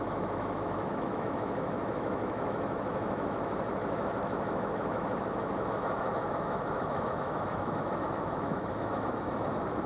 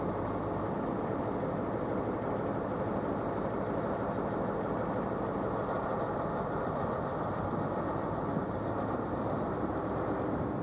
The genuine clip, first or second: second